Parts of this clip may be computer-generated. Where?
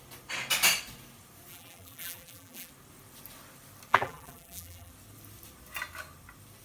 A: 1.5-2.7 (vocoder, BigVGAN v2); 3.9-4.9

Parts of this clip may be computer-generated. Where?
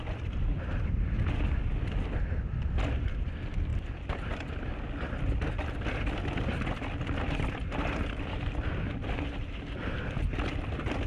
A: none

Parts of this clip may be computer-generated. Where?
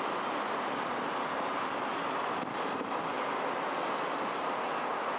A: none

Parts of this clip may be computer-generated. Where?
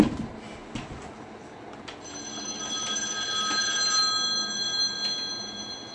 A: none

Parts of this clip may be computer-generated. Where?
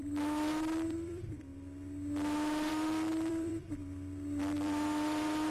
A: 0.0-1.5 (vocoder, BigVGAN v2); 2.7-3.8; 4.4-5.5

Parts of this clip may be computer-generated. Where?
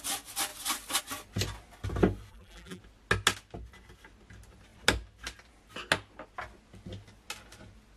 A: 2.3-2.8 (vocoder, BigVGAN v2)